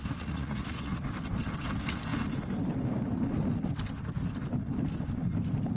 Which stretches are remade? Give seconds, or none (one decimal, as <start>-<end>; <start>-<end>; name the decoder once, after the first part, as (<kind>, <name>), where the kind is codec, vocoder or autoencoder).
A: 0.0-1.0 (vocoder, Vocos)